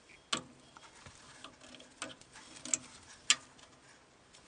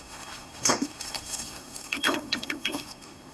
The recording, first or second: first